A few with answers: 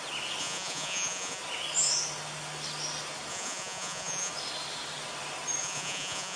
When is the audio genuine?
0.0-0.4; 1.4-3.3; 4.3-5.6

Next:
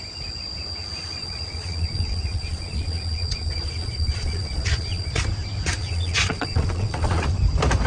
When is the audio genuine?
0.0-1.2; 5.2-5.8; 7.3-7.9

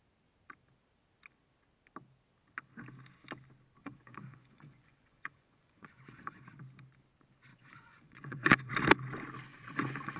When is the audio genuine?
0.0-3.8; 6.4-7.5; 8.7-9.5

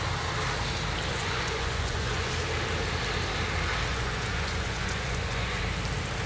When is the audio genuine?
0.0-1.1; 2.3-3.9; 5.6-6.3

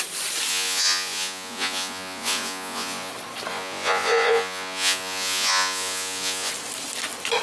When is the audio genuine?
0.0-0.5; 3.1-3.5; 6.5-7.4

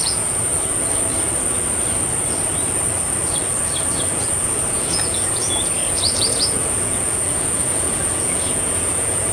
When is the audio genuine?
0.5-3.9

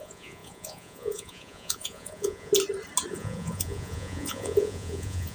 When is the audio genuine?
2.5-3.1